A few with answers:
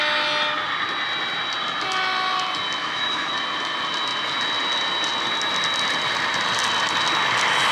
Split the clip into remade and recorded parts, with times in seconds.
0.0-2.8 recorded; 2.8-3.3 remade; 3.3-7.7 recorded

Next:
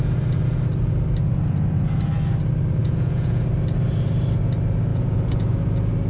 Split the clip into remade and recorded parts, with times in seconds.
0.0-2.8 recorded; 2.8-3.4 remade; 3.4-4.9 recorded; 4.9-5.6 remade; 5.6-6.1 recorded